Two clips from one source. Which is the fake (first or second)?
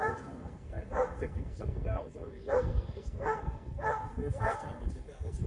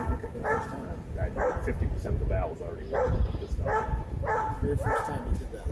first